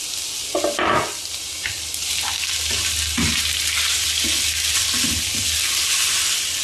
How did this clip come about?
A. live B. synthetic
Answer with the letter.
A